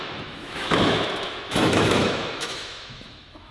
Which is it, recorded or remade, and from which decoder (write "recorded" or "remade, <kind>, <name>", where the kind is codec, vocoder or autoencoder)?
remade, autoencoder, DAC-VAE